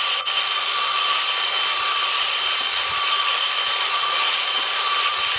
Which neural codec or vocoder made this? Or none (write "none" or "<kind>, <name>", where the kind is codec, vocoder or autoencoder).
vocoder, Vocos